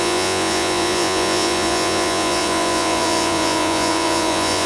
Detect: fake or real fake